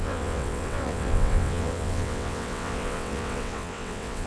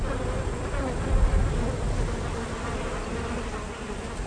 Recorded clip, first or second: second